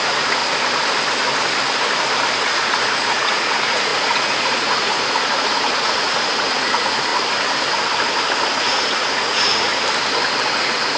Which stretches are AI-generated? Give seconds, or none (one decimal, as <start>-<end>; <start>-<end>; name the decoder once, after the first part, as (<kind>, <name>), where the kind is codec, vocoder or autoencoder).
0.0-0.4 (vocoder, Vocos); 2.4-7.1; 8.5-9.7; 10.6-11.0